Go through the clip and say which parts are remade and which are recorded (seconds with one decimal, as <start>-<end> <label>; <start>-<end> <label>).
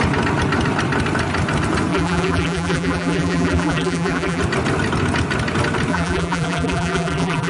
0.0-1.9 recorded; 1.9-4.4 remade; 4.4-5.9 recorded; 5.9-7.5 remade